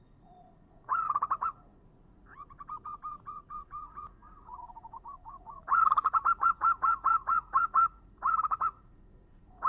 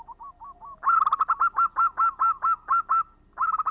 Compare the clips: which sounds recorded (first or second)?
second